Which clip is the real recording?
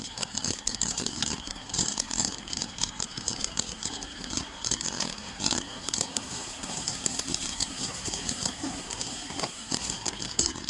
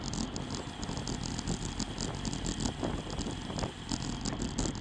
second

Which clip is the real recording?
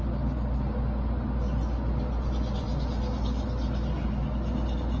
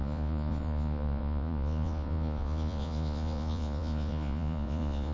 first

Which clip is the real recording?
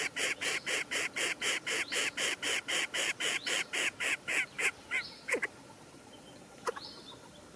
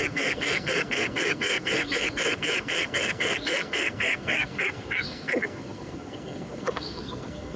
first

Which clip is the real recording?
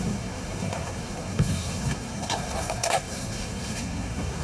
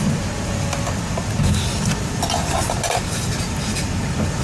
second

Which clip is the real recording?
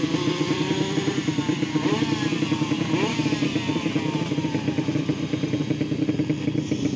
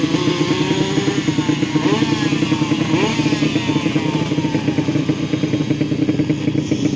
second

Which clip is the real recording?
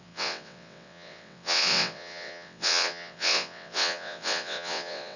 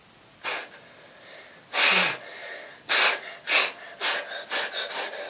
second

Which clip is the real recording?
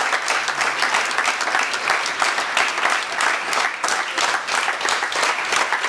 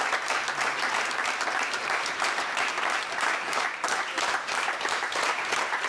first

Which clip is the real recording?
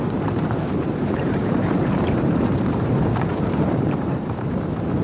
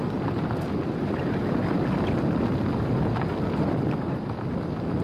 second